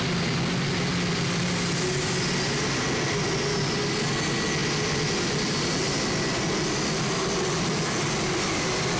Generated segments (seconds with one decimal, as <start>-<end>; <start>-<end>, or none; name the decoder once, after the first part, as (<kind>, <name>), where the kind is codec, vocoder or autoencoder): none